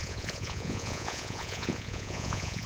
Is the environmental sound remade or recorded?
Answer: remade